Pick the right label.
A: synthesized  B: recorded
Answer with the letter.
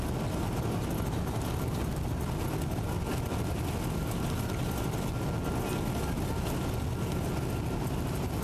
B